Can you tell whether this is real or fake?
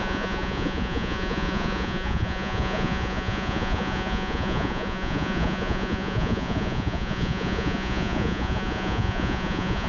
fake